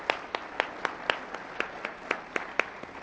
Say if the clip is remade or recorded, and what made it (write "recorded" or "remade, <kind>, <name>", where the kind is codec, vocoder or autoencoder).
recorded